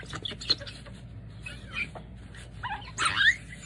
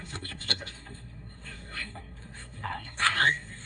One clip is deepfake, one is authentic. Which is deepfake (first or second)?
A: second